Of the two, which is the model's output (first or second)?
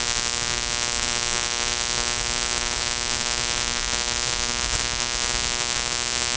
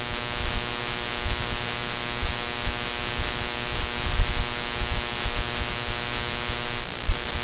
first